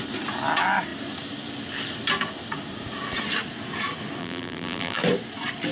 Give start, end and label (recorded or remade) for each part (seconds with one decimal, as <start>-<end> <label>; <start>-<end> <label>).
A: 0.0-4.2 recorded; 4.2-5.0 remade; 5.0-5.7 recorded